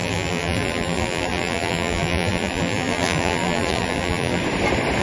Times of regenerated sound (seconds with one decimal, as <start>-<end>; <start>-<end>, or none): 0.0-4.4